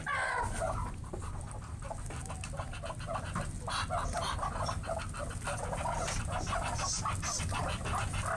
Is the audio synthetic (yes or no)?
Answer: no